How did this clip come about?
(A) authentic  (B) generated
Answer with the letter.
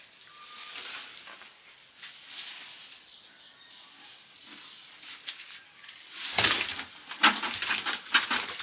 A